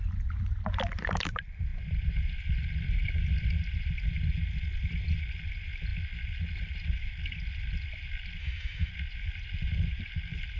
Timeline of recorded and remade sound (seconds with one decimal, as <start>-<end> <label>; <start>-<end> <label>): 0.0-8.4 recorded; 8.4-8.9 remade; 8.9-10.6 recorded